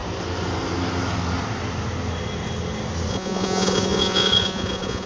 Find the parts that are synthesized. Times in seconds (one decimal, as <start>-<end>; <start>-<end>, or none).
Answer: 3.1-5.1